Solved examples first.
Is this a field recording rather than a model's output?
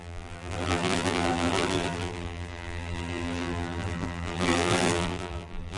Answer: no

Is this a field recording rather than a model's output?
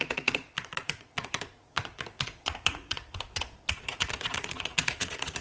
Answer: no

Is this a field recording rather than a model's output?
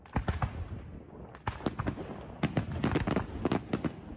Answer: yes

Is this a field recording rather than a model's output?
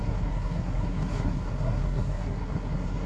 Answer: no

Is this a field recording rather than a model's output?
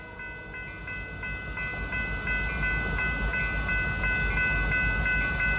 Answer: yes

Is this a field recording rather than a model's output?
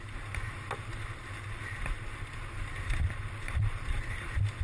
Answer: yes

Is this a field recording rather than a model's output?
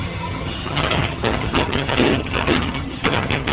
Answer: no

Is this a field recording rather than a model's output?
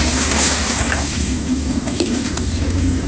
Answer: no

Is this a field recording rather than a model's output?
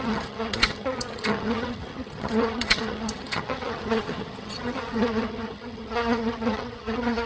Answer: no